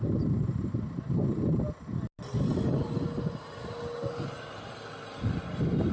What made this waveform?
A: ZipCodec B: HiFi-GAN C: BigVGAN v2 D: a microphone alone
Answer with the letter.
D